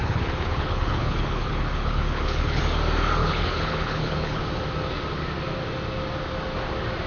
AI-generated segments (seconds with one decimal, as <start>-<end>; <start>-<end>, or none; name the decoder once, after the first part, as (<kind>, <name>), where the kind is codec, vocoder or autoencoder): 0.0-2.6 (codec, HILCodec); 3.2-4.4